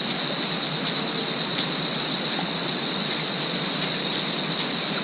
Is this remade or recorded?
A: recorded